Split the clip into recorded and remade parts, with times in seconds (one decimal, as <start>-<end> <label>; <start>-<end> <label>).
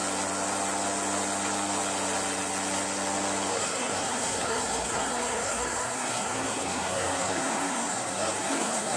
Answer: 0.0-3.5 recorded; 3.5-9.0 remade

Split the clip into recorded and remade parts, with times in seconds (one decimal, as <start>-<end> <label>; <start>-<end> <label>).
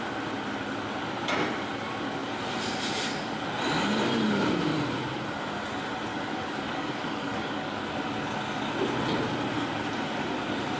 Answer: 0.0-6.1 recorded; 6.1-7.8 remade; 7.8-10.8 recorded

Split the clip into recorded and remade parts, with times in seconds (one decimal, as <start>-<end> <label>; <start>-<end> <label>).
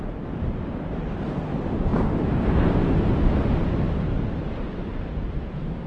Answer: 0.0-5.9 recorded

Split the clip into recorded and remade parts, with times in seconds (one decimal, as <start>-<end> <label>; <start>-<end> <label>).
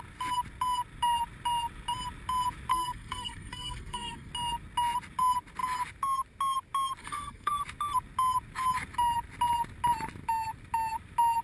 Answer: 0.0-2.7 recorded; 2.7-4.3 remade; 4.3-7.0 recorded; 7.0-7.5 remade; 7.5-11.4 recorded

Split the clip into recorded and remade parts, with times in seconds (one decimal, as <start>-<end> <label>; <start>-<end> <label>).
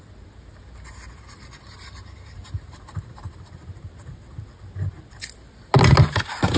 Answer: 0.0-6.6 recorded